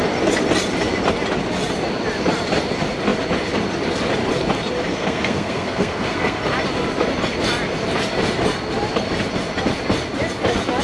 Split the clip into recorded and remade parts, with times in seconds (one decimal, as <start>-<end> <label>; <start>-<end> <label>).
0.0-4.9 recorded; 4.9-6.4 remade; 6.4-10.8 recorded